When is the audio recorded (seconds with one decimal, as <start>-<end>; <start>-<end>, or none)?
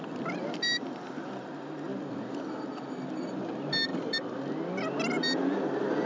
0.0-6.1